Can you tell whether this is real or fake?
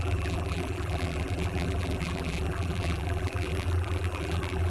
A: fake